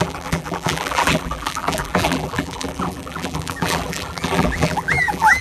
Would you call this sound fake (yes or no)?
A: yes